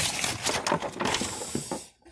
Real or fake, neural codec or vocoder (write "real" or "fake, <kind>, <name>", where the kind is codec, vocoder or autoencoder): real